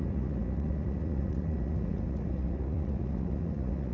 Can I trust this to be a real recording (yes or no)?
no